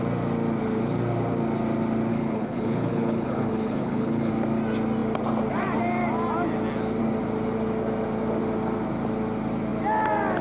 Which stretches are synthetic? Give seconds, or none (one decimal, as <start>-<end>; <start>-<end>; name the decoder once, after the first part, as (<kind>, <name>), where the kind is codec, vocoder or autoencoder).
2.1-4.3 (codec, HILCodec)